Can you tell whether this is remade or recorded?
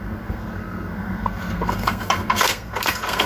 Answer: remade